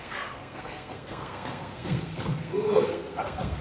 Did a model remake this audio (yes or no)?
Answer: yes